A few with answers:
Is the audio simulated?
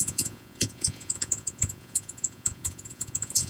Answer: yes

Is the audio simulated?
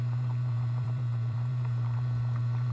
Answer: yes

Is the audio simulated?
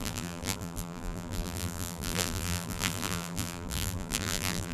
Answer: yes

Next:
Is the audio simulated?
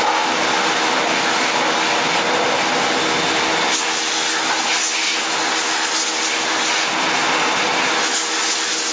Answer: no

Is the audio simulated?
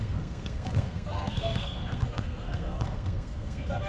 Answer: yes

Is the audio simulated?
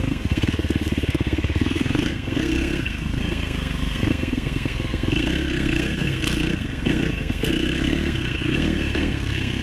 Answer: yes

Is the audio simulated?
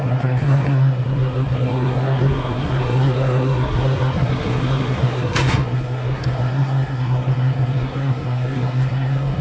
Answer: yes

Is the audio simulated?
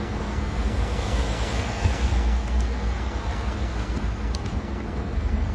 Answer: yes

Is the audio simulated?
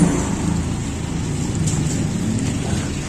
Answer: no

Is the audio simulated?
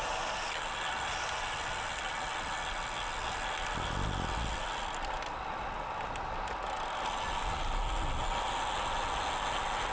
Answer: no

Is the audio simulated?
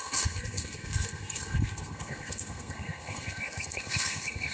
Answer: yes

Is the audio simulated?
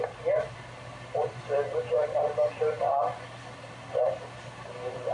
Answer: yes